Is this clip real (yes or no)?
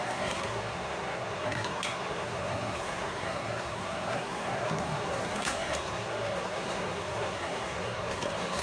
no